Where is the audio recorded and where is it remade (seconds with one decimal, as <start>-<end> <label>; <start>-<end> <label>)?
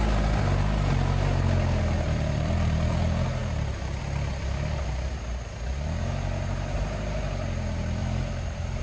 0.0-3.4 recorded; 3.4-4.0 remade; 4.0-8.0 recorded; 8.0-8.8 remade